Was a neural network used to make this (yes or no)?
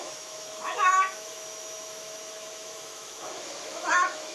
yes